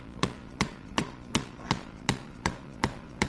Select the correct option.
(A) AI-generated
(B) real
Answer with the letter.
A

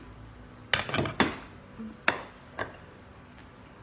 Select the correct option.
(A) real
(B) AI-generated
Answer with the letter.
A